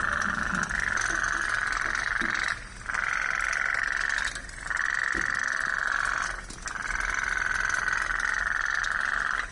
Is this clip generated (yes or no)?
no